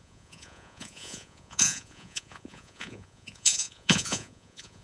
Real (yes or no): no